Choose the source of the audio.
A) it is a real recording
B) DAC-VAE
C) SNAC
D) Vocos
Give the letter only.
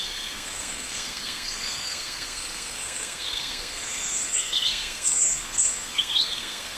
C